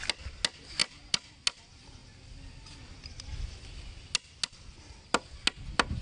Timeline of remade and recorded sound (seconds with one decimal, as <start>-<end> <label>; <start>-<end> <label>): 0.0-6.0 recorded